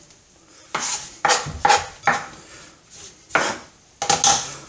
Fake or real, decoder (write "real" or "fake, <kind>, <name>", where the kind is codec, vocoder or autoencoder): real